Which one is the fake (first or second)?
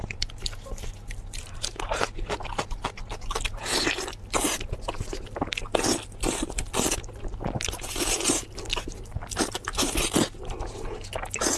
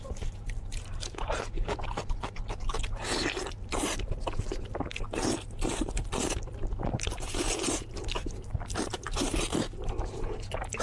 second